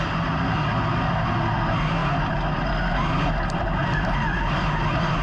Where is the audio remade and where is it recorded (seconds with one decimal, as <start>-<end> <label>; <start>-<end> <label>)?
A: 0.0-5.2 recorded